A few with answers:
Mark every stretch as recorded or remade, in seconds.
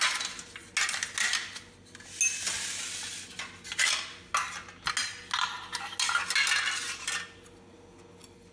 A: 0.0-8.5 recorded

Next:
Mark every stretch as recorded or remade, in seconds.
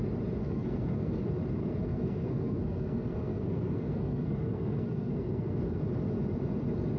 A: 0.0-0.4 recorded; 0.4-1.2 remade; 1.2-1.6 recorded; 1.6-5.8 remade; 5.8-7.0 recorded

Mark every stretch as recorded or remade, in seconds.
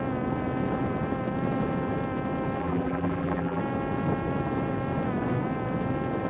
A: 0.0-2.6 recorded; 2.6-3.6 remade; 3.6-6.3 recorded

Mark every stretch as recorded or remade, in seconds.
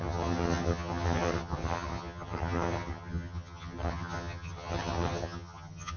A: 0.0-6.0 remade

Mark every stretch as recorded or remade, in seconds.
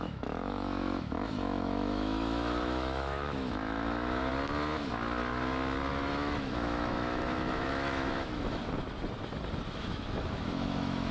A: 0.0-4.3 remade; 4.3-5.9 recorded; 5.9-8.6 remade; 8.6-9.7 recorded; 9.7-11.1 remade